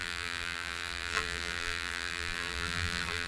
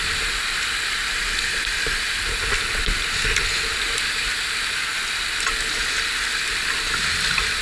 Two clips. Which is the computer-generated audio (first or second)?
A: first